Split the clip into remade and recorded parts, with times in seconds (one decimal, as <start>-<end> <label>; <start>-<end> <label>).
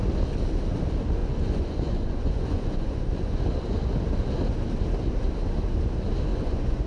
0.0-1.2 recorded; 1.2-3.4 remade; 3.4-6.3 recorded; 6.3-6.9 remade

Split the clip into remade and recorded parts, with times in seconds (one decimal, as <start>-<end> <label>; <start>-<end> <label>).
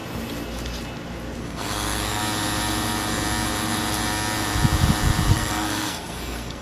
0.0-1.4 recorded; 1.4-2.2 remade; 2.2-5.3 recorded; 5.3-6.6 remade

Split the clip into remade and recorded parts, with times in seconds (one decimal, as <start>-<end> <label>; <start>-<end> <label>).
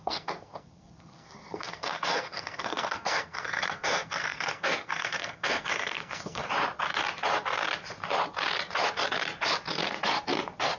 0.0-6.4 remade; 6.4-10.8 recorded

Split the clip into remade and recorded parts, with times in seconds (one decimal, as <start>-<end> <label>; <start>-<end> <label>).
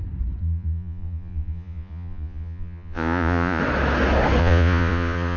0.0-0.4 recorded; 0.4-3.6 remade; 3.6-4.4 recorded; 4.4-5.4 remade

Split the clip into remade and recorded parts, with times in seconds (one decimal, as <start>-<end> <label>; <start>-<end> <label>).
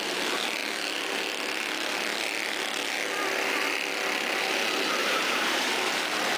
0.0-5.0 recorded; 5.0-5.7 remade; 5.7-6.4 recorded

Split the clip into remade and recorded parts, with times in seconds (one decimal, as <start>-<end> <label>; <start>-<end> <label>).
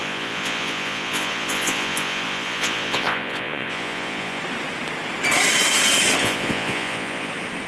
0.0-4.4 remade; 4.4-6.2 recorded; 6.2-7.3 remade; 7.3-7.7 recorded